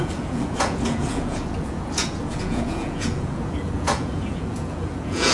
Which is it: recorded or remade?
remade